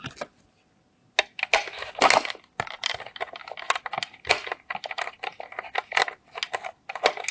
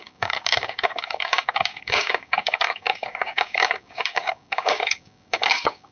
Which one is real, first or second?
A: first